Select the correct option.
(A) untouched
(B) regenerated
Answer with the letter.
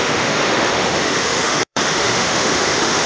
B